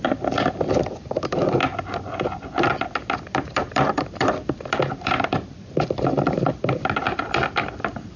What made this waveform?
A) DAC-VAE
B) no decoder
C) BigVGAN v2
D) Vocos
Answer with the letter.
C